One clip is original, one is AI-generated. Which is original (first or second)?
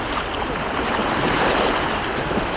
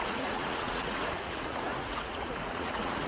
first